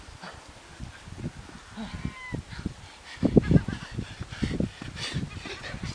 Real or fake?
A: real